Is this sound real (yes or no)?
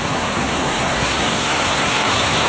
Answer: no